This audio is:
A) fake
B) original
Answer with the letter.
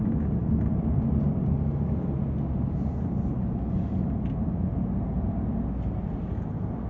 B